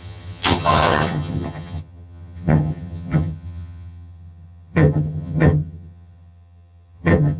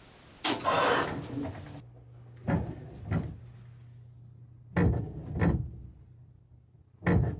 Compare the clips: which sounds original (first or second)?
second